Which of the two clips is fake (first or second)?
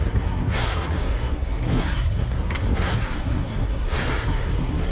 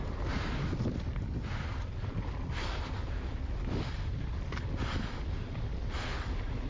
first